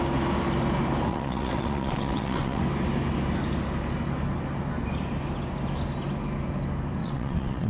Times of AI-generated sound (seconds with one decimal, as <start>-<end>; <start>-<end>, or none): 1.1-2.6; 7.0-7.7